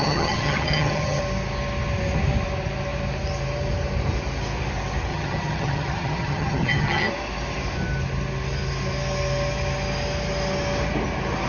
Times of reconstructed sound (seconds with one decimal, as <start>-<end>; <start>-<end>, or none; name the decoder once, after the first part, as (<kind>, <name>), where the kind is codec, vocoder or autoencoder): 0.0-1.2 (vocoder, HiFi-GAN); 5.1-7.1